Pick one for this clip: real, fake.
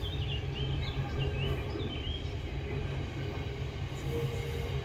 real